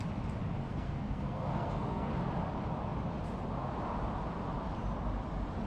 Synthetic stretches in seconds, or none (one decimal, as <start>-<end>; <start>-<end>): 0.6-2.1